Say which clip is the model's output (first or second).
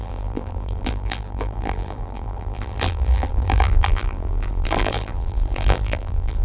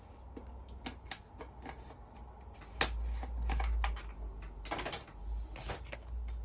first